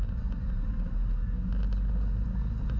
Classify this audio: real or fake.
real